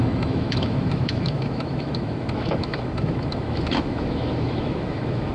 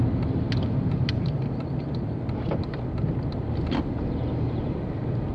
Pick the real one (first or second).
second